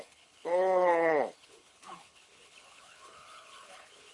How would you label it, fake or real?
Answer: fake